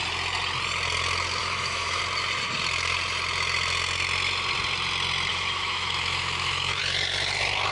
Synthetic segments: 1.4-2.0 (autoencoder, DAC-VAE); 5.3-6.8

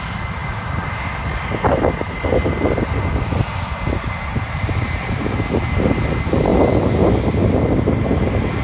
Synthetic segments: none

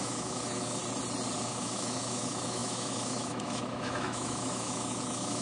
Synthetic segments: 0.0-0.8 (autoencoder, DAC-VAE); 1.4-5.4

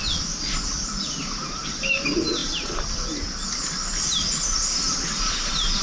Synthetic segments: none

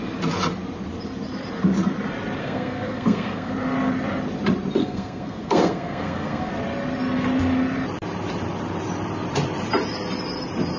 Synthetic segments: 2.4-3.5 (codec, SNAC); 4.8-6.5

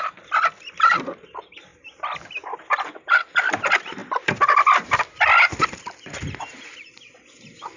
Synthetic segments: none

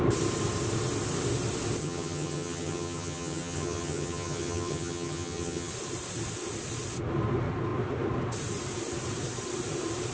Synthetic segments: 1.8-5.7 (vocoder, HiFi-GAN)

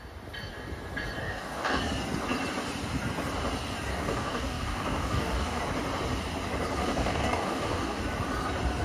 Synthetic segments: 1.2-1.8 (codec, DAC); 3.9-5.6; 6.8-8.0